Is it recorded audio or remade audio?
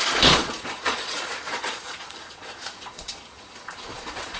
remade